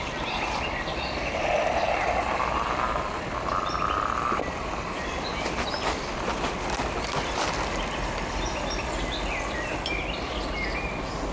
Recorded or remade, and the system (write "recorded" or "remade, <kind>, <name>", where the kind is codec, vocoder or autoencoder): recorded